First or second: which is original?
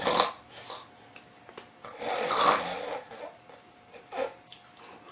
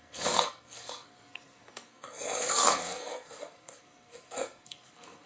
first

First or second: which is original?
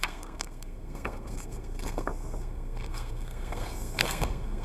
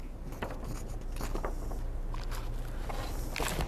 second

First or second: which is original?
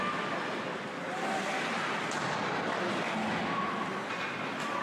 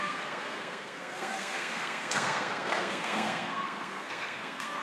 first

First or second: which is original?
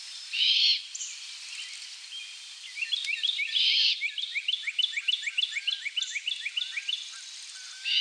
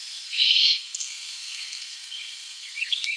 first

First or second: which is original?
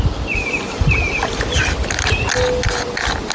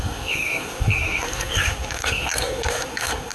first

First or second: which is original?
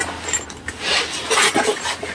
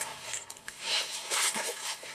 first